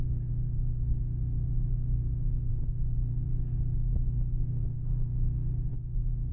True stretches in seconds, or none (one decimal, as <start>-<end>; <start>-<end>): 0.0-6.3